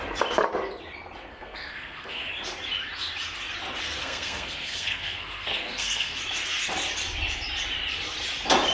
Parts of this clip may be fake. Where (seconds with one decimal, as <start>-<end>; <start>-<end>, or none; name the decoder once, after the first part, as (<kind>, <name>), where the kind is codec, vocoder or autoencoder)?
1.3-2.3 (codec, SNAC); 4.0-6.2